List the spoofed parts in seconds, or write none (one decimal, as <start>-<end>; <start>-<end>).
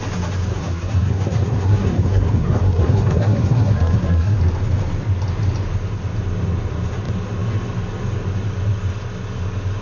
0.5-4.4